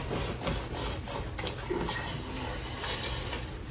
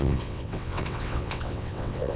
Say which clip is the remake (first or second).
second